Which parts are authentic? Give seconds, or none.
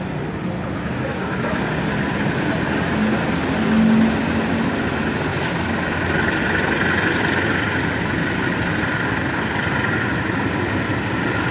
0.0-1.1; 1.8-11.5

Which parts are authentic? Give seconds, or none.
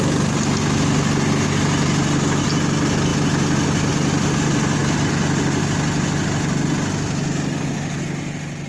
0.0-8.7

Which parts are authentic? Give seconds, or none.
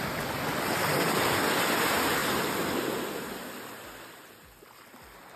0.0-5.4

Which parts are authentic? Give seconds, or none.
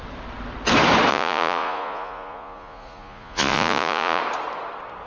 0.0-1.1; 4.2-5.1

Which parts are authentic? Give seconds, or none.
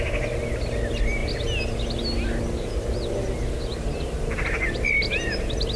0.0-5.8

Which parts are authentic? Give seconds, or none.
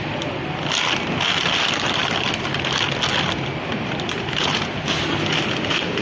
0.0-3.7; 4.7-6.0